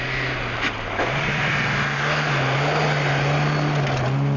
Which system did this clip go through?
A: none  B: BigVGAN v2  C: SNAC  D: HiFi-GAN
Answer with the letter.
A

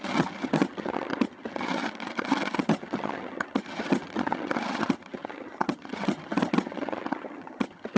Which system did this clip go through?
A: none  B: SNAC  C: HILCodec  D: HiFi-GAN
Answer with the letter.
D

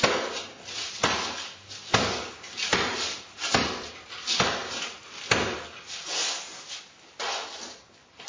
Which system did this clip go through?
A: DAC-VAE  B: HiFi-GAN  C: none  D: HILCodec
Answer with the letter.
C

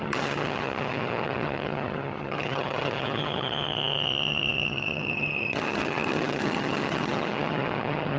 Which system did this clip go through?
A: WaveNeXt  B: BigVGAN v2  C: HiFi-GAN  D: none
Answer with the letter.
C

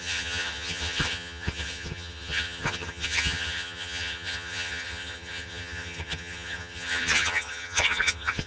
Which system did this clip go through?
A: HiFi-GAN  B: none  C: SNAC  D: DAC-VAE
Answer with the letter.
A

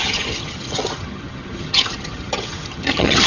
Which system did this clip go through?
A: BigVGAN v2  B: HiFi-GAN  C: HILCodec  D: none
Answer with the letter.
B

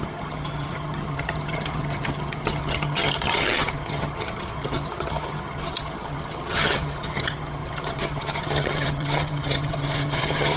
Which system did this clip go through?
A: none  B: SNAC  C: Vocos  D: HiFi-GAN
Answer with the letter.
D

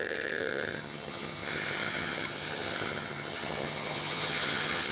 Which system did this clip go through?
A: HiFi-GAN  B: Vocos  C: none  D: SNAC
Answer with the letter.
A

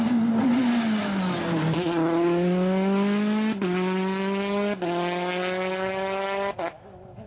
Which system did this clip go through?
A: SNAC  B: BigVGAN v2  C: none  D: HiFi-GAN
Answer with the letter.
C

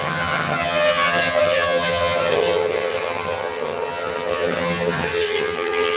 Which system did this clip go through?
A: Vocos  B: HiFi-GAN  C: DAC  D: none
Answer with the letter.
B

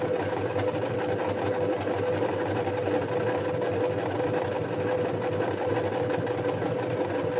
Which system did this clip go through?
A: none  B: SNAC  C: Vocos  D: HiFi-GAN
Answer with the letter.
A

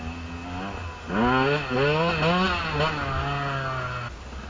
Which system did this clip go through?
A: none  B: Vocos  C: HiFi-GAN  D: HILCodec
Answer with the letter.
A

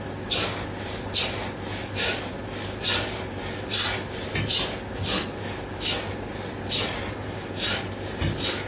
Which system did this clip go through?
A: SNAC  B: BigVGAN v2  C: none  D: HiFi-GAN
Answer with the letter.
C